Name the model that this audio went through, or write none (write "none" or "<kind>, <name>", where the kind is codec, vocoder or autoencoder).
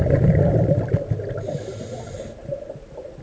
none